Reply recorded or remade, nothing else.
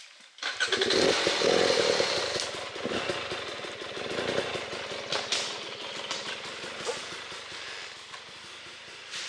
recorded